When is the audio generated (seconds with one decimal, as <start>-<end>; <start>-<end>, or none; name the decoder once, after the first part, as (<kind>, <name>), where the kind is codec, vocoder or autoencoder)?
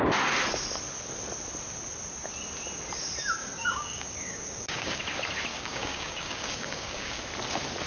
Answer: 3.4-5.0 (codec, DAC); 5.5-7.2